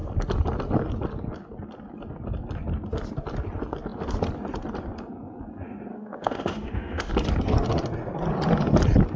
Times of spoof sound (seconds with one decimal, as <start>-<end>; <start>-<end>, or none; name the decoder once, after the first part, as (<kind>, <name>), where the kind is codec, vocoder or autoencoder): 5.9-7.1 (autoencoder, DAC-VAE)